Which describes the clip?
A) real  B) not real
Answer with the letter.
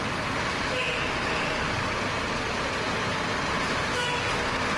A